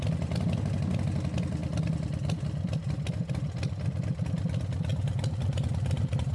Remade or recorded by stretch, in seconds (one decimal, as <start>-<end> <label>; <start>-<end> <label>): 0.0-4.9 recorded; 4.9-6.3 remade